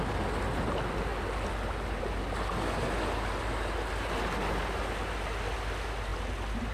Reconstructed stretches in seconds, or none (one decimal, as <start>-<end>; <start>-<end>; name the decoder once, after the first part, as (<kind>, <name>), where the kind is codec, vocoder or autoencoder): none